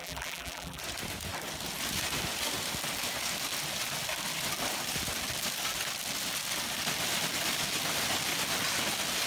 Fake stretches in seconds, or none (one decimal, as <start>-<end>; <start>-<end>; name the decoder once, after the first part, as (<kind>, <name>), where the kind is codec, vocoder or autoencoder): 0.0-0.8 (vocoder, BigVGAN v2)